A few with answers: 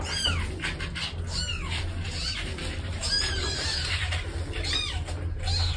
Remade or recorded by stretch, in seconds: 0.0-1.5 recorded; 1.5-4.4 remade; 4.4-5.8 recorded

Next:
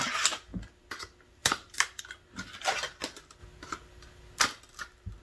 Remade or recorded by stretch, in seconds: 0.0-1.4 recorded; 1.4-2.0 remade; 2.0-5.2 recorded

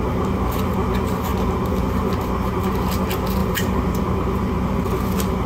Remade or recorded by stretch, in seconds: 0.0-3.4 recorded; 3.4-4.0 remade; 4.0-5.5 recorded

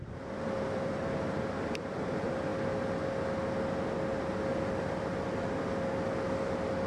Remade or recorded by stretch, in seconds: 0.0-2.5 remade; 2.5-6.9 recorded

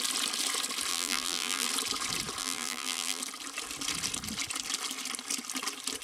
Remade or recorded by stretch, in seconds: 0.0-0.9 recorded; 0.9-1.7 remade; 1.7-2.4 recorded; 2.4-3.2 remade; 3.2-6.0 recorded

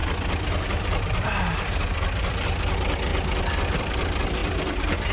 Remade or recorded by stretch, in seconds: 0.0-0.6 recorded; 0.6-3.1 remade; 3.1-3.8 recorded; 3.8-5.1 remade

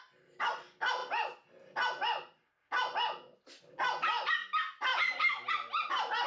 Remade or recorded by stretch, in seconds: 0.0-6.3 recorded